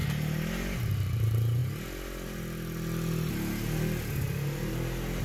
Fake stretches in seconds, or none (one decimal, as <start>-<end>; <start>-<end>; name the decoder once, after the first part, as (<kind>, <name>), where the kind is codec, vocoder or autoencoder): none